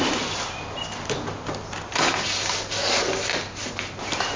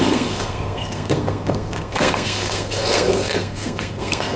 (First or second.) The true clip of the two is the first